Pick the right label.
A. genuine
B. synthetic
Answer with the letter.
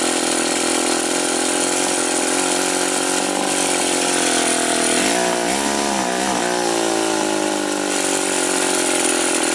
A